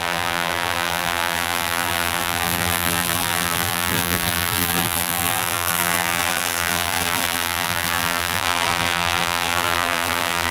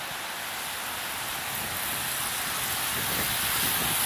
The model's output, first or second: first